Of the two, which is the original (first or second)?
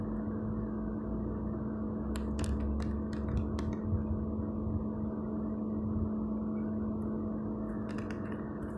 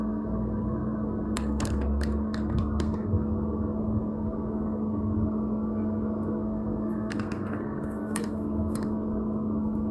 first